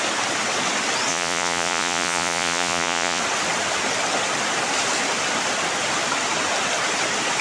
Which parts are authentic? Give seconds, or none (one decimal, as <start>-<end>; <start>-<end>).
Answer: 0.0-1.1; 3.2-7.4